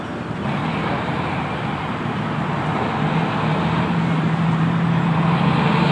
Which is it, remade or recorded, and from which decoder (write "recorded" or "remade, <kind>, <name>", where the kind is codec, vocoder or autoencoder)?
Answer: remade, vocoder, BigVGAN v2